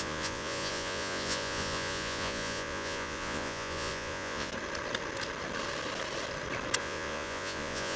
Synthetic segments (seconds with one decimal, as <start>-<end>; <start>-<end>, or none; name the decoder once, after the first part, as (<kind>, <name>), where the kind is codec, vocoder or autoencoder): 0.0-4.5 (vocoder, Vocos); 6.8-8.0